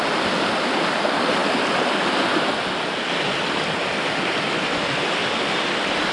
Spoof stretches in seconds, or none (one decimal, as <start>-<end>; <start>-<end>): none